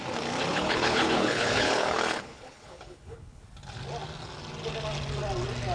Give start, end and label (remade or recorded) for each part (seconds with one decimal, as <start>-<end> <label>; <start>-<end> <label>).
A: 0.0-0.5 recorded; 0.5-3.4 remade; 3.4-5.7 recorded